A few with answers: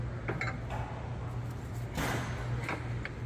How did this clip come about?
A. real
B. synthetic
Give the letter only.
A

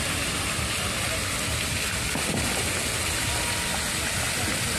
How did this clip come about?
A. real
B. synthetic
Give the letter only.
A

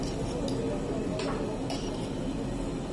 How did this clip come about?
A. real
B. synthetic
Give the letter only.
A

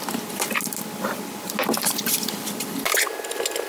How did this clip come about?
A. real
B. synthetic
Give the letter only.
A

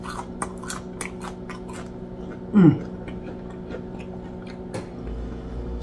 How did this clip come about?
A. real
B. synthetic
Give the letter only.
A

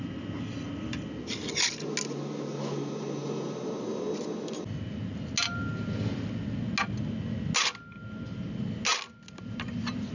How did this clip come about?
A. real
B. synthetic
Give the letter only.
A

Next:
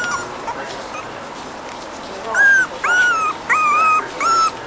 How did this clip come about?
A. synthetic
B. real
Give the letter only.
B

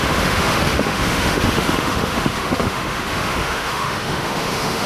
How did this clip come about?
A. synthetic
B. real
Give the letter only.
A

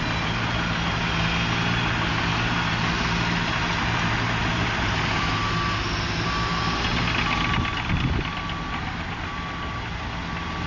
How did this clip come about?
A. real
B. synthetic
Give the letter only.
A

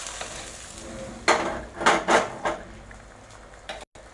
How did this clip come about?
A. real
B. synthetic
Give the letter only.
A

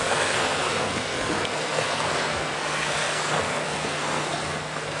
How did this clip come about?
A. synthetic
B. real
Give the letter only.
A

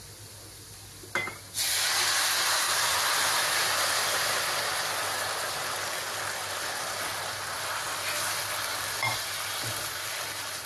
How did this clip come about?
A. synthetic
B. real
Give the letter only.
B